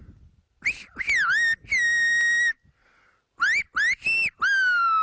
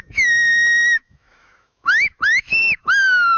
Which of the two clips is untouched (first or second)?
first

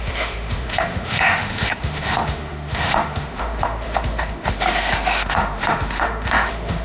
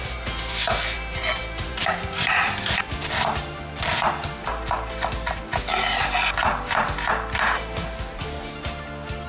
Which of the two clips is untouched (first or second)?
second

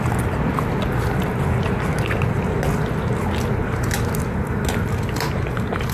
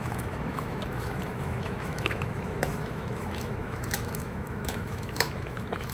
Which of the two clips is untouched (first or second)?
first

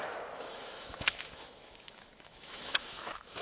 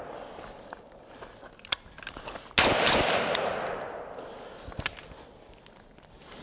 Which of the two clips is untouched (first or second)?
second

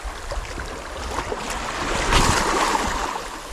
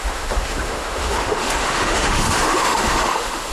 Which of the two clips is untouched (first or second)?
first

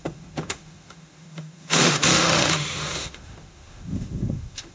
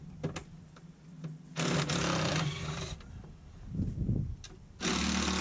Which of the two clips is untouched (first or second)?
second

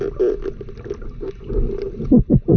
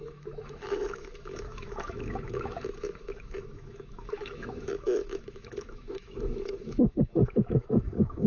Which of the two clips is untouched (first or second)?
first